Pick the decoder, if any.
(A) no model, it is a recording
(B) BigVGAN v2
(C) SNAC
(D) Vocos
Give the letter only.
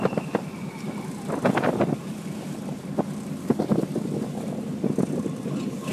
A